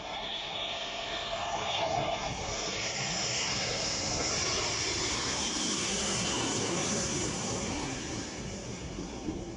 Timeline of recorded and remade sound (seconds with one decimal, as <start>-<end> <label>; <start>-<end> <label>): 0.0-4.3 remade; 4.3-5.1 recorded; 5.1-9.6 remade